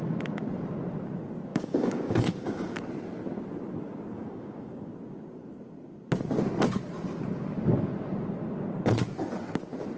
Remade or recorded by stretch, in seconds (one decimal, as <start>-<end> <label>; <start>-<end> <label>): 0.0-1.5 recorded; 1.5-2.8 remade; 2.8-4.1 recorded; 4.1-4.9 remade; 4.9-10.0 recorded